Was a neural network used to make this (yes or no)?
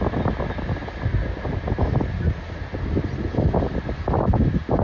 no